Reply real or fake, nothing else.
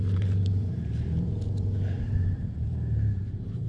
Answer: fake